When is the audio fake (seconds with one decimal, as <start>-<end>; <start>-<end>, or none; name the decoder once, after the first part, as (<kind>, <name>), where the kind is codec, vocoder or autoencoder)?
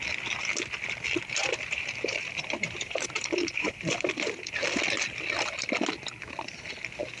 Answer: 1.4-4.1 (vocoder, BigVGAN v2)